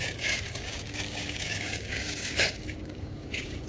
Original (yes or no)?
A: no